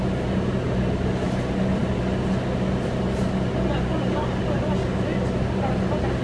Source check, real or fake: real